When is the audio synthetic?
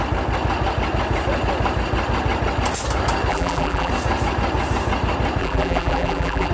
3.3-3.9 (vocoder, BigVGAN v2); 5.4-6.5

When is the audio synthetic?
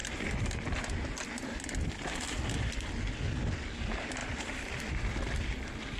4.2-4.9 (vocoder, BigVGAN v2)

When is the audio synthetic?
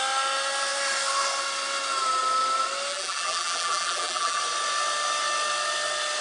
2.9-4.4 (vocoder, BigVGAN v2)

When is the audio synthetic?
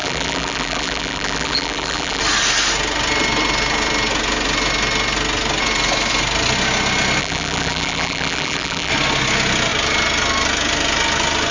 0.0-2.2 (vocoder, BigVGAN v2); 7.2-8.9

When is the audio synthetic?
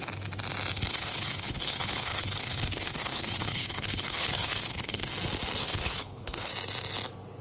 0.9-5.1 (codec, HILCodec); 5.6-6.5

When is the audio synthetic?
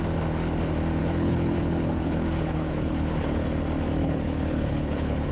1.0-3.6 (codec, HILCodec); 4.0-5.3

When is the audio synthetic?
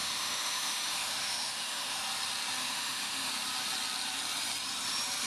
0.0-2.0 (autoencoder, DAC-VAE); 2.6-3.3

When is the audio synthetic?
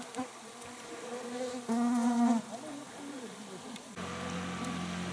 none